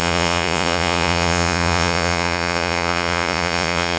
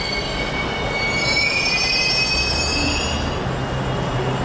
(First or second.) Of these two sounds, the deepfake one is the first